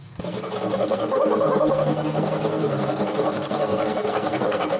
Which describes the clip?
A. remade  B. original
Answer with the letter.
A